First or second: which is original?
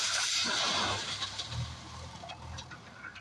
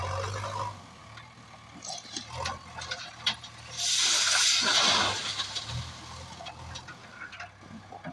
second